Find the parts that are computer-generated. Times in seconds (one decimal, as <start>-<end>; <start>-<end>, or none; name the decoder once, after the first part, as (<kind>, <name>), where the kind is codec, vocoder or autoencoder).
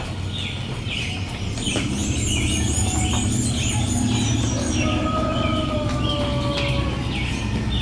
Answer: none